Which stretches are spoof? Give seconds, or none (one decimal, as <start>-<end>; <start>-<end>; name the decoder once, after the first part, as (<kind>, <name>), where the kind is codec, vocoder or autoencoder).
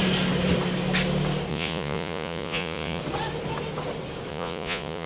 1.5-3.0 (vocoder, Vocos); 4.3-5.1